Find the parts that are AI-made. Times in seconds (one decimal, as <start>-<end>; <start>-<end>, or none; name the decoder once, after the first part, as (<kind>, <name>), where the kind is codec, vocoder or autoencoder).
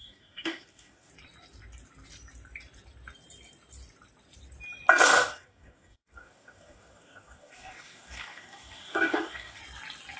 0.0-1.1 (codec, DAC); 5.1-9.6